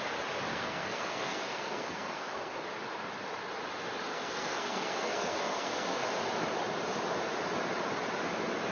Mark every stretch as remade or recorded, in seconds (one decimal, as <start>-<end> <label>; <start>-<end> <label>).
0.0-0.5 recorded; 0.5-2.6 remade; 2.6-4.1 recorded; 4.1-6.1 remade; 6.1-8.7 recorded